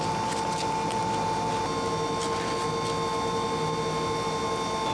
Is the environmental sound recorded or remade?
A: recorded